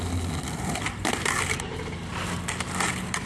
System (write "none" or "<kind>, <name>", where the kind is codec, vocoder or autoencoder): none